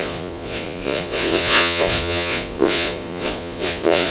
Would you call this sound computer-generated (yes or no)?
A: yes